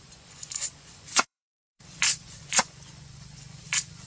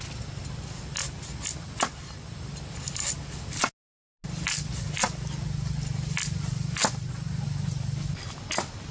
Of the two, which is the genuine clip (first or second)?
second